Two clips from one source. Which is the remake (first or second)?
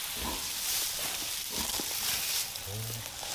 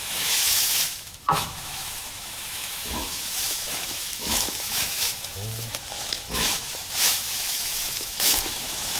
second